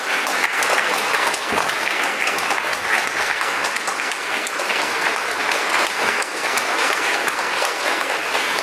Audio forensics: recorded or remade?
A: remade